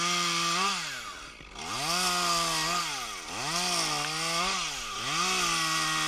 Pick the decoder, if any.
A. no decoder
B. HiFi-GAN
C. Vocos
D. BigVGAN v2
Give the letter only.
A